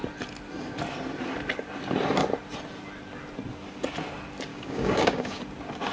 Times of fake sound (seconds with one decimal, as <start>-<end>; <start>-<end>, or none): 4.5-5.4